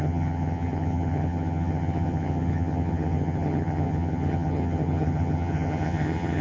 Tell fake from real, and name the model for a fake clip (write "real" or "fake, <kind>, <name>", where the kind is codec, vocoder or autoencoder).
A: fake, vocoder, HiFi-GAN